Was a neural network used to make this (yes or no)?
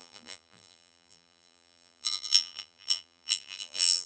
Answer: yes